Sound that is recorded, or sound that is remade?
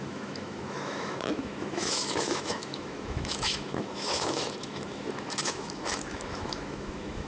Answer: remade